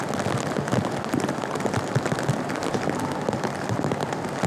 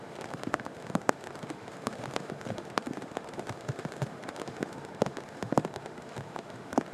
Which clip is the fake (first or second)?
second